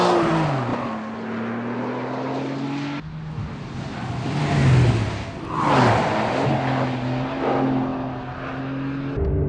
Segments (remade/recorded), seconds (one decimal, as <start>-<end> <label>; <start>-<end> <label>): 0.0-9.5 recorded